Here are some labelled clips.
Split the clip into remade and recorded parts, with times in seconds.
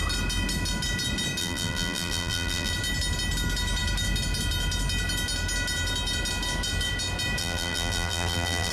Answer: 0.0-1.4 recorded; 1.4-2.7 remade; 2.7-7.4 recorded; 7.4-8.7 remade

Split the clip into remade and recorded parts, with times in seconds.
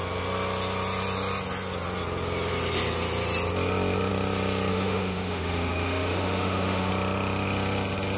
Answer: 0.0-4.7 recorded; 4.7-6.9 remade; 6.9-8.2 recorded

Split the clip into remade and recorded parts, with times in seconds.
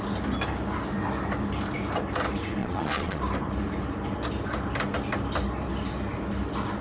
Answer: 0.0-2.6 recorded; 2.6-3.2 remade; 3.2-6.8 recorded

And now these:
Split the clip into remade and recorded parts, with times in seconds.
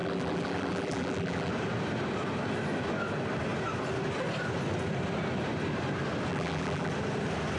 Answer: 0.0-1.5 remade; 1.5-6.3 recorded; 6.3-6.9 remade; 6.9-7.6 recorded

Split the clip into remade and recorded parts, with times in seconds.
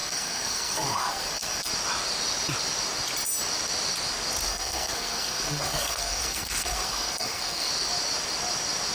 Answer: 0.0-1.7 remade; 1.7-4.5 recorded; 4.5-7.7 remade; 7.7-8.9 recorded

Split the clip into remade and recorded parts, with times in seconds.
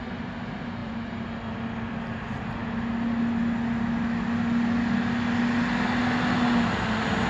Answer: 0.0-7.3 recorded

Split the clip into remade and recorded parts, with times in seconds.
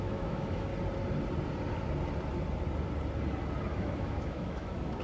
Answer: 0.0-0.7 remade; 0.7-3.7 recorded; 3.7-5.0 remade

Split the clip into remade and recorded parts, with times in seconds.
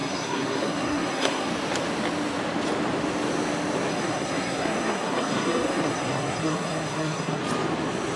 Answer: 0.0-1.5 remade; 1.5-3.9 recorded; 3.9-7.4 remade; 7.4-8.2 recorded